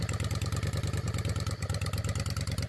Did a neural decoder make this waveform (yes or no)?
no